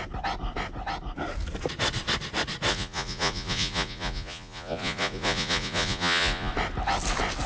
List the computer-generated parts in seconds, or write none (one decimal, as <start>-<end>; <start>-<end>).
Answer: 2.7-6.5